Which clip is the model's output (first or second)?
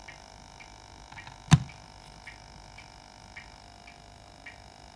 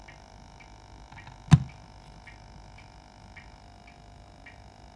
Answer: first